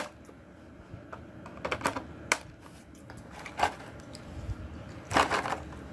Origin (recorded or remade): recorded